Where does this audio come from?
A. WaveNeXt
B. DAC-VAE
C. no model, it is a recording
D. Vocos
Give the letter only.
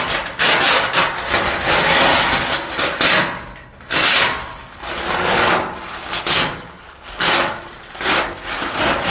C